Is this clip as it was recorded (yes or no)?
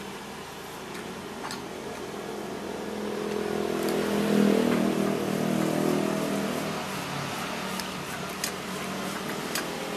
yes